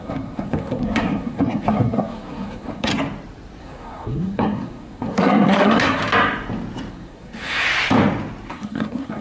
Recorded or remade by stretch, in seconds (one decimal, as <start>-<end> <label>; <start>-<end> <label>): 0.0-2.9 remade; 2.9-3.6 recorded; 3.6-6.0 remade; 6.0-6.9 recorded; 6.9-7.7 remade; 7.7-8.5 recorded; 8.5-9.2 remade